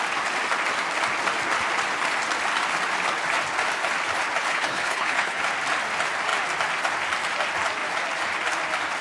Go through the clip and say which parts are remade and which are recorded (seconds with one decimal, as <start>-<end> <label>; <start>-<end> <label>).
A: 0.0-4.5 recorded; 4.5-5.4 remade; 5.4-9.0 recorded